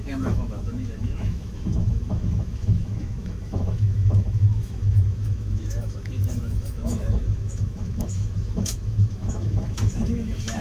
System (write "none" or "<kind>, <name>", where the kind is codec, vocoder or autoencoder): autoencoder, DAC-VAE